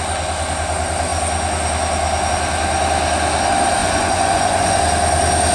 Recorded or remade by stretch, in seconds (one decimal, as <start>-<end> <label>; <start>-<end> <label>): 0.0-3.8 recorded; 3.8-4.8 remade; 4.8-5.5 recorded